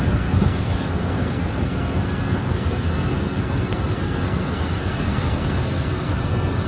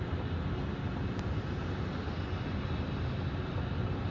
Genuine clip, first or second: second